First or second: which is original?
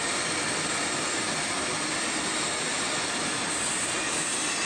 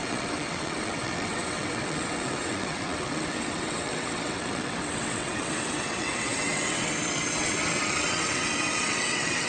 first